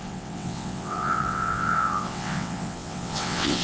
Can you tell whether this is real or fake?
fake